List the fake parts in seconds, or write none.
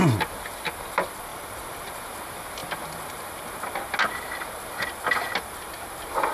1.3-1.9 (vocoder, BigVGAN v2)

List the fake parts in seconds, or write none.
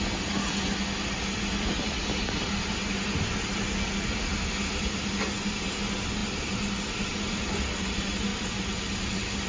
8.3-9.5 (vocoder, BigVGAN v2)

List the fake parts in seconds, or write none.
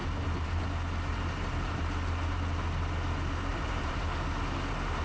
0.0-0.6 (vocoder, BigVGAN v2); 1.1-1.8; 3.5-4.0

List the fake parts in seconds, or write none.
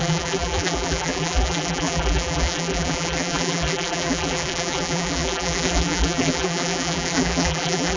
0.0-8.0 (vocoder, BigVGAN v2)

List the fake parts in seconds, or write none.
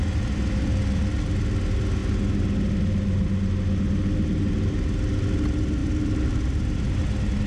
none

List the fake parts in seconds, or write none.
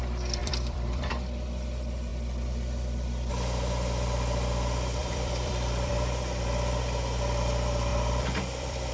0.4-1.1 (vocoder, BigVGAN v2); 5.0-5.9; 7.9-8.9